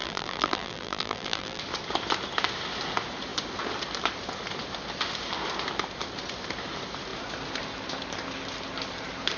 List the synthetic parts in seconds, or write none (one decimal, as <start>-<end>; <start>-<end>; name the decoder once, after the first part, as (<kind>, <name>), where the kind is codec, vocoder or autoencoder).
0.0-1.6 (vocoder, BigVGAN v2)